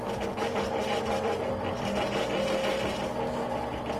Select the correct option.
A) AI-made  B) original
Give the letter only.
B